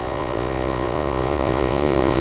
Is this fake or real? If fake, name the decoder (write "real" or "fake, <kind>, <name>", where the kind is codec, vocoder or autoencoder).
fake, vocoder, Vocos